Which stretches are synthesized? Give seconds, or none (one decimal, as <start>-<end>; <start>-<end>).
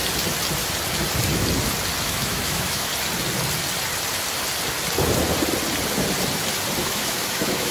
2.0-2.9; 6.8-7.7